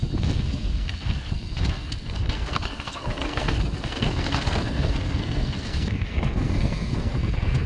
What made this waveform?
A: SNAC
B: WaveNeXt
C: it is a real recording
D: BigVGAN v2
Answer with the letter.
A